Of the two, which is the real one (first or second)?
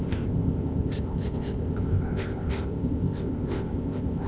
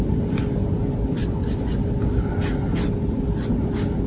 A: second